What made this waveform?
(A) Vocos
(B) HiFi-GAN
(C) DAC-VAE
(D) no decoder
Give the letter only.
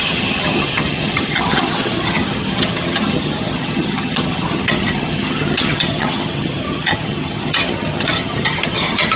B